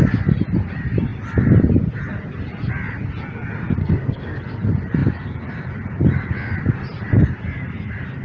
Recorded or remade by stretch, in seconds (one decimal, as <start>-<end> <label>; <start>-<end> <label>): 0.0-3.8 recorded; 3.8-4.4 remade; 4.4-8.2 recorded